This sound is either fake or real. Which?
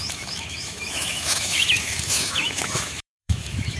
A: fake